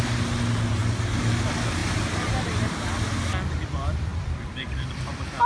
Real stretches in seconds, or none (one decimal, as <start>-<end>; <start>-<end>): 0.0-4.1; 4.9-5.5